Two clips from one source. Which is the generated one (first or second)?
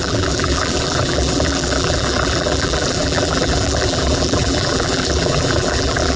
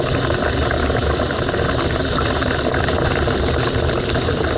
first